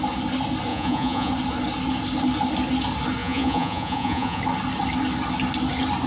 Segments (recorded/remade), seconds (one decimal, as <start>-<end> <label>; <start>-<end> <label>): 0.0-0.7 recorded; 0.7-1.3 remade; 1.3-3.2 recorded; 3.2-4.4 remade; 4.4-6.1 recorded